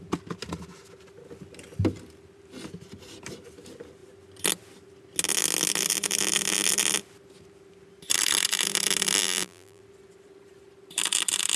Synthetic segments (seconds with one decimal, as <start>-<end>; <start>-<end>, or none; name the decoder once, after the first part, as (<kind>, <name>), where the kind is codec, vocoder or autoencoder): 9.2-9.8 (vocoder, BigVGAN v2)